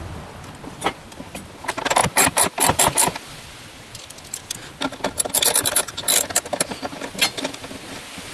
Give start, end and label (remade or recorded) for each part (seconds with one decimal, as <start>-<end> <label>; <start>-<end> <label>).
0.0-2.0 recorded; 2.0-2.8 remade; 2.8-8.3 recorded